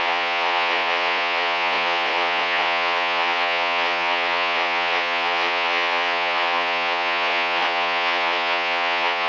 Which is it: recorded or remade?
remade